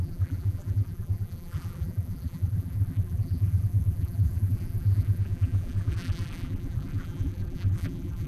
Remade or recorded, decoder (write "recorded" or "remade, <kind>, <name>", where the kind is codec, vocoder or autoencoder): remade, vocoder, BigVGAN v2